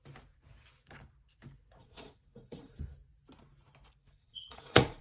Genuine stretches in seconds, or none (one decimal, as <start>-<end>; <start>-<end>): 0.0-1.8; 2.8-4.0